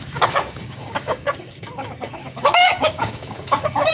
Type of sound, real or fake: fake